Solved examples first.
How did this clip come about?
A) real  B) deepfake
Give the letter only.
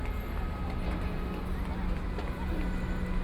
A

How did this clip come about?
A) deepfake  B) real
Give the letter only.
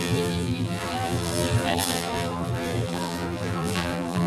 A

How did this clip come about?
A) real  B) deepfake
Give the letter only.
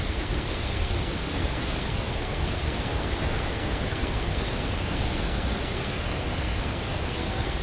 B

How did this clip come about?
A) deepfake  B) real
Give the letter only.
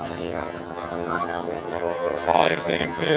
A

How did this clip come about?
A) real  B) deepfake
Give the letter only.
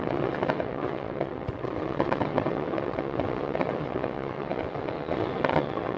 B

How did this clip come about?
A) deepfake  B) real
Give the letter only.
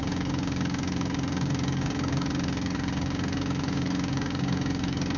A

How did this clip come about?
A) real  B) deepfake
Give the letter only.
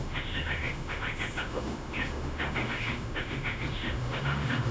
B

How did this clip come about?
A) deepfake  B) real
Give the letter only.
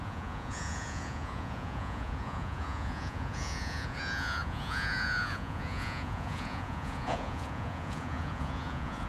A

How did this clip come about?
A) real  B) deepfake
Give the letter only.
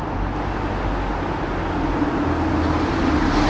A